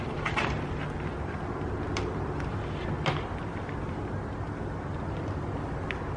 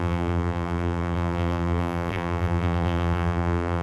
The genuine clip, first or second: first